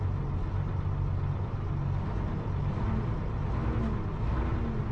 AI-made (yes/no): no